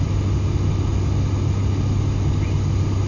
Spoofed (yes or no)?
no